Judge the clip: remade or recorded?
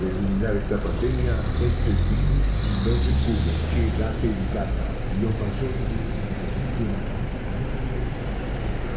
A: recorded